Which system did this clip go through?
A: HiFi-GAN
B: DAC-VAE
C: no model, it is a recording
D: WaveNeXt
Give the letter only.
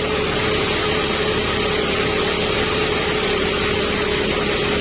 C